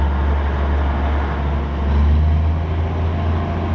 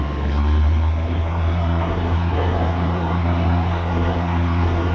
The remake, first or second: second